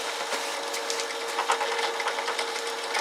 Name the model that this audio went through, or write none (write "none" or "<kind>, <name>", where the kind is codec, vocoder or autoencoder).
none